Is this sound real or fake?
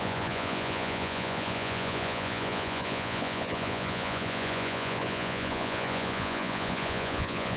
fake